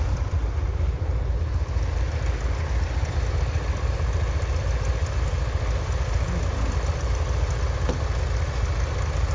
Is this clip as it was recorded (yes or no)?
yes